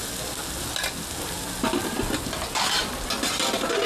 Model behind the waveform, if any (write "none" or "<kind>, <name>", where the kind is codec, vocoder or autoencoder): none